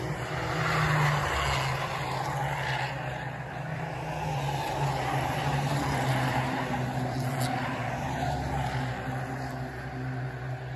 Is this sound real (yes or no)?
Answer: yes